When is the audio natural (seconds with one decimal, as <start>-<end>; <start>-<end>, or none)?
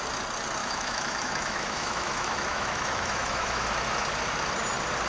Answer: 0.0-0.6; 3.7-5.1